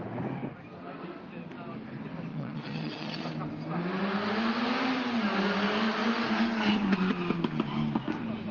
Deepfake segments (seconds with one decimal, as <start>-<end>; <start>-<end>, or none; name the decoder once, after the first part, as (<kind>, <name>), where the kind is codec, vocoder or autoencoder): 2.3-3.2 (vocoder, Vocos)